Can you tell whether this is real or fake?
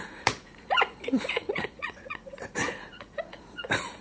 fake